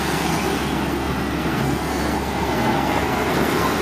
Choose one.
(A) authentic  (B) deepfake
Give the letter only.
B